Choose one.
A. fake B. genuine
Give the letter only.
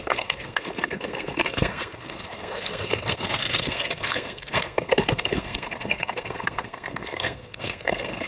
A